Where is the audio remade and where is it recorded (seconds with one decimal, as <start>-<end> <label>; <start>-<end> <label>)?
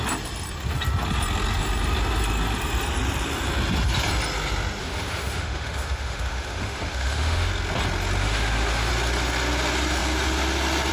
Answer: 0.0-4.8 recorded; 4.8-7.5 remade; 7.5-8.2 recorded; 8.2-8.9 remade; 8.9-10.9 recorded